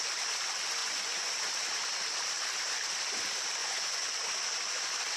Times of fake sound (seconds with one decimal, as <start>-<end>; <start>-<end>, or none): 0.8-1.3; 3.6-4.1

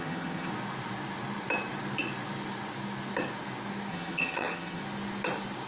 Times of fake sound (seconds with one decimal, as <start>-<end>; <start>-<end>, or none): 0.0-0.5; 3.9-4.8

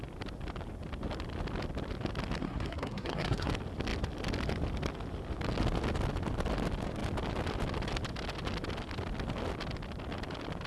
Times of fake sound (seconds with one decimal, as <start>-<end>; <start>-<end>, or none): 2.4-3.5

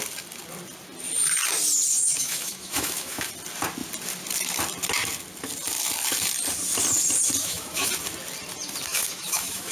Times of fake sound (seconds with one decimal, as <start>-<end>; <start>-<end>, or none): 1.9-3.3; 7.4-7.9; 8.9-9.7

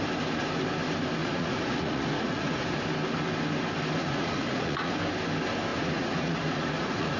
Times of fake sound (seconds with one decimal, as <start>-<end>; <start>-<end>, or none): 1.2-2.8; 4.0-4.9; 5.7-7.2

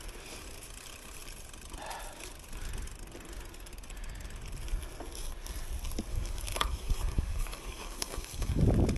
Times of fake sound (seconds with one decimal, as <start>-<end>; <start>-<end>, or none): 6.1-8.6

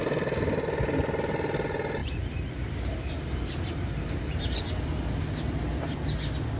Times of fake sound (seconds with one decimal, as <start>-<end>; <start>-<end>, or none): 2.0-4.6

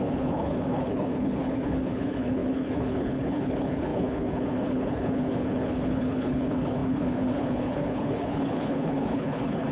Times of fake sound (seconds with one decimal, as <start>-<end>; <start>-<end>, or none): 0.0-9.7